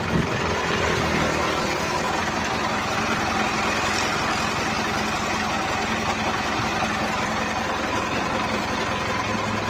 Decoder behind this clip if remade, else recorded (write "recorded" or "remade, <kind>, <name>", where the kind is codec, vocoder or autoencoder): recorded